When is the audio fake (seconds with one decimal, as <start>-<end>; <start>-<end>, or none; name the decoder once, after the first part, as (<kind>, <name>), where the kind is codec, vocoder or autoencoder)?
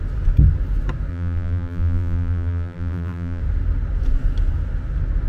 1.1-3.4 (vocoder, BigVGAN v2)